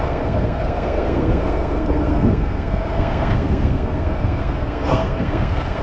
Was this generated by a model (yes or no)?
yes